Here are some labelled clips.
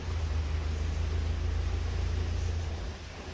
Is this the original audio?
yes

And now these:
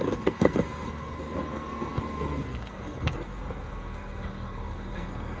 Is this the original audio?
no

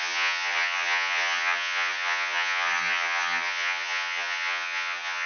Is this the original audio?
no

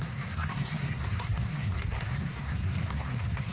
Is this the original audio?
no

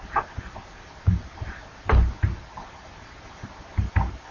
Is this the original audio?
yes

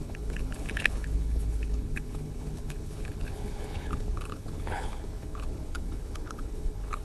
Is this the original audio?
no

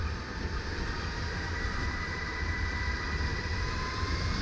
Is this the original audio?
yes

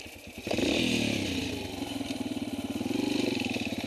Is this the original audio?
no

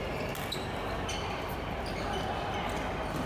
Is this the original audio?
yes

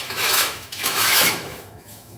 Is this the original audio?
no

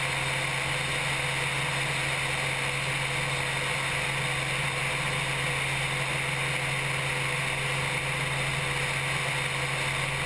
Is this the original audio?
yes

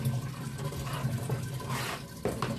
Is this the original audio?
yes